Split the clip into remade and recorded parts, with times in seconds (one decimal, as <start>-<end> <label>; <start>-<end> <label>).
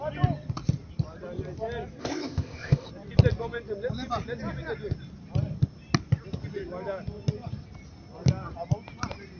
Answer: 0.0-2.0 recorded; 2.0-2.9 remade; 2.9-9.4 recorded